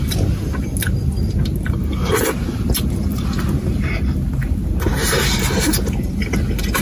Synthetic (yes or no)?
no